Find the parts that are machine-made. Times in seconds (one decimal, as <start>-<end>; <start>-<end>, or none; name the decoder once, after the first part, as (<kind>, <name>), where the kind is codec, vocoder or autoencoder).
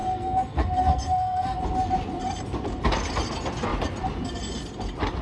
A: 0.0-1.6 (codec, SNAC)